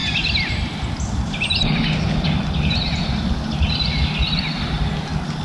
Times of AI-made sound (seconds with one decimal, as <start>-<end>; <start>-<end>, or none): none